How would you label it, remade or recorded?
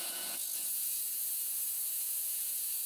remade